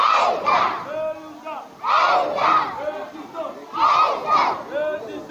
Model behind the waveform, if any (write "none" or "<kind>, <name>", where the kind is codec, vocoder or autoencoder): none